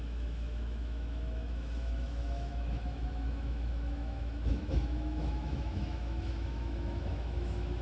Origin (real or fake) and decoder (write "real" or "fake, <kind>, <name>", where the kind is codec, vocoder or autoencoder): fake, autoencoder, DAC-VAE